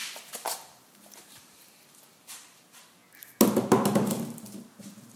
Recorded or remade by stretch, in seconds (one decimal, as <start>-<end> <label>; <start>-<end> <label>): 0.0-0.5 recorded; 0.5-3.0 remade; 3.0-4.8 recorded; 4.8-5.2 remade

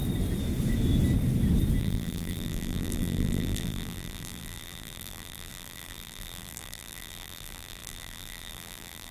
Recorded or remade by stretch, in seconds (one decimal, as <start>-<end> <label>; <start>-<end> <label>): 0.0-1.8 recorded; 1.8-9.1 remade

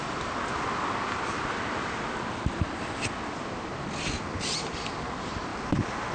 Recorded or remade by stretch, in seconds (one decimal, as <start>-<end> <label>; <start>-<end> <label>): 0.0-5.5 remade; 5.5-6.1 recorded

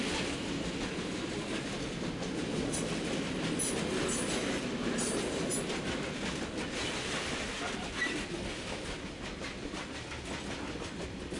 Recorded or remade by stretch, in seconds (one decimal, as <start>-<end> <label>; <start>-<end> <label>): 0.0-11.4 recorded